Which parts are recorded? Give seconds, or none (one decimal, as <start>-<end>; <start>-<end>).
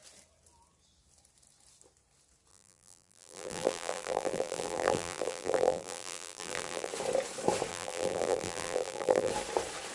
0.0-2.5; 6.9-7.7; 9.3-9.9